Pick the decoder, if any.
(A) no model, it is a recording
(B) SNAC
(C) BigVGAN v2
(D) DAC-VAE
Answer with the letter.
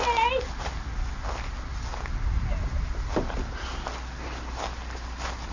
A